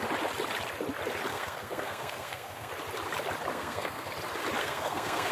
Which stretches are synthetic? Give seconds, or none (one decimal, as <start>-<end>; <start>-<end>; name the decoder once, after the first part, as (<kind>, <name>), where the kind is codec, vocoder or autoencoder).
1.3-2.7 (codec, SNAC); 3.5-4.1; 4.6-5.3